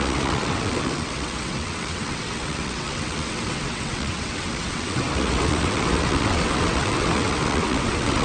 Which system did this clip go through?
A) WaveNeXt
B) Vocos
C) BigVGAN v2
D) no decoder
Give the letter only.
A